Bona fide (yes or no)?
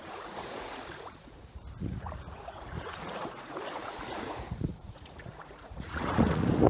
no